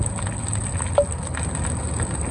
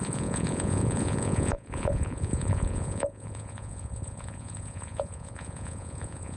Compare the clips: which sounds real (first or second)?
first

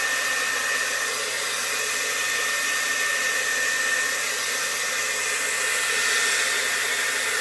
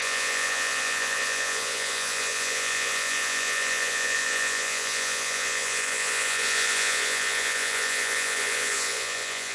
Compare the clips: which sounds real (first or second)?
first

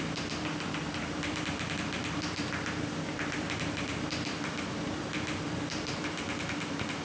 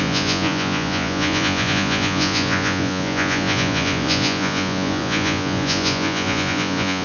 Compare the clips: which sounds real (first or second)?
first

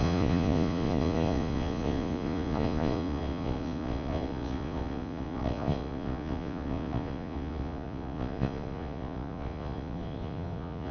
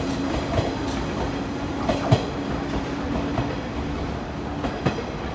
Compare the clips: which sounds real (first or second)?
second